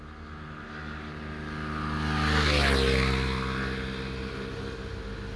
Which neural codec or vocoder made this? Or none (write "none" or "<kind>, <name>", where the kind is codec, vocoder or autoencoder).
none